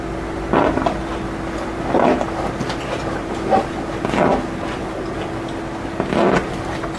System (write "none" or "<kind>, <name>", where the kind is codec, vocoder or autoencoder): none